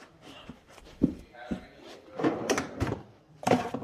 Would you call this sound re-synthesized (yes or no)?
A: yes